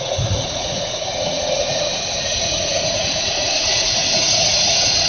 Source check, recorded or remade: remade